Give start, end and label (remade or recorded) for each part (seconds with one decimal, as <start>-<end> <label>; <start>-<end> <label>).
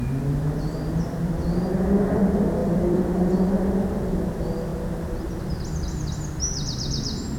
0.0-2.6 recorded; 2.6-3.5 remade; 3.5-7.4 recorded